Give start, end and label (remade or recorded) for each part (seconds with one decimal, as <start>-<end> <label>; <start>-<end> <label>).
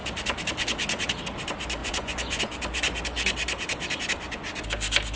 0.0-1.8 recorded; 1.8-2.4 remade; 2.4-5.2 recorded